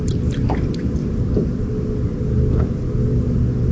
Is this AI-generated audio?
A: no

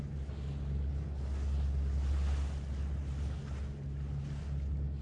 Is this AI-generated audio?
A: no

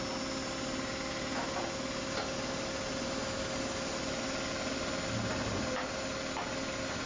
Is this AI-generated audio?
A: no